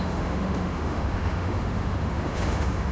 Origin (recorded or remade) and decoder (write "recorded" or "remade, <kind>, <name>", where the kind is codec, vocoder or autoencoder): remade, autoencoder, DAC-VAE